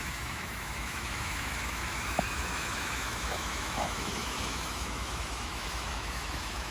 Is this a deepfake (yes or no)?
yes